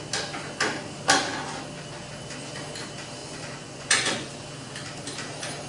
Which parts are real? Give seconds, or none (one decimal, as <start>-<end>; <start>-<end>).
0.0-3.2; 4.3-5.7